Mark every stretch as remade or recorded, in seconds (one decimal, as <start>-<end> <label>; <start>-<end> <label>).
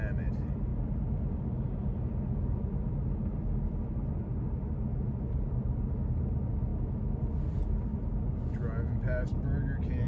0.0-10.1 recorded